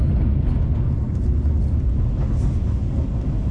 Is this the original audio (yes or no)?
yes